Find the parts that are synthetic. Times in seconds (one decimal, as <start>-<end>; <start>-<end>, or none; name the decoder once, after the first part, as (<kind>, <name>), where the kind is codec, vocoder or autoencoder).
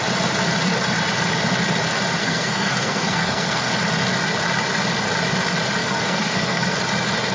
2.2-3.7 (codec, SNAC); 5.8-6.8